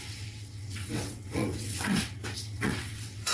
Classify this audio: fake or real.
fake